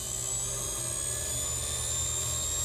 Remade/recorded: recorded